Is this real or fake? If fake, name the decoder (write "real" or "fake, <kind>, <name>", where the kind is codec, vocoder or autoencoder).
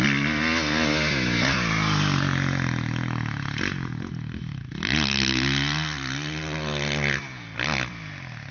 real